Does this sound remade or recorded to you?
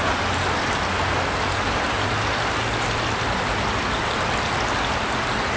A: recorded